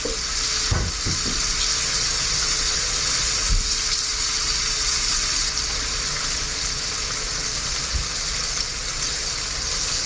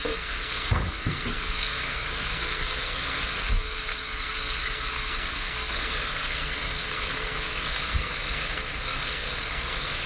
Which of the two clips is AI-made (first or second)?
second